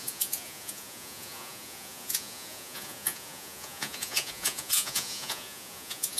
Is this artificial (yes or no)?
yes